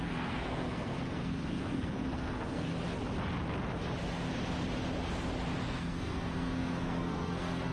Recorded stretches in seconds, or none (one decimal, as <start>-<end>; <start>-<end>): 2.7-5.6